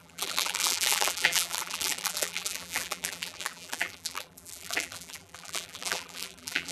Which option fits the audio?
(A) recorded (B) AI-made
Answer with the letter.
B